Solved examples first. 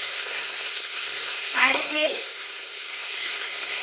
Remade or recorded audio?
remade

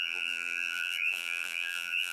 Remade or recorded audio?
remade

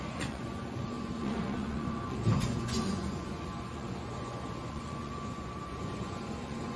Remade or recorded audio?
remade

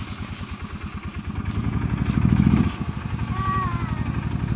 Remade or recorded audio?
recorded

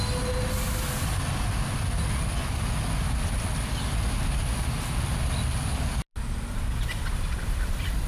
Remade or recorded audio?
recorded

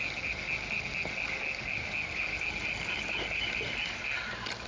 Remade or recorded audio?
recorded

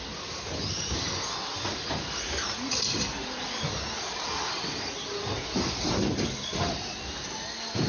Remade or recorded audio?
recorded